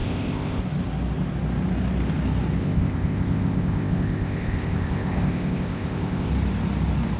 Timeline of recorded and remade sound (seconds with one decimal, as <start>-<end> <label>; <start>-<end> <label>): 0.0-0.6 remade; 0.6-2.6 recorded; 2.6-6.3 remade; 6.3-7.2 recorded